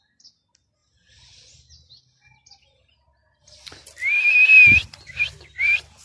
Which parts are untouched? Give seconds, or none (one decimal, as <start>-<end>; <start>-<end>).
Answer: 0.0-6.0